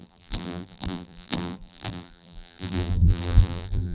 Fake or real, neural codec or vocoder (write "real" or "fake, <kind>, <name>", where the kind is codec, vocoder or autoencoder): fake, vocoder, BigVGAN v2